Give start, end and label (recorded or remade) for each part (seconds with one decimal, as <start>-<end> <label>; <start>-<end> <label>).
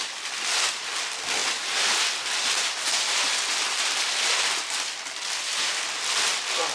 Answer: 0.0-6.7 recorded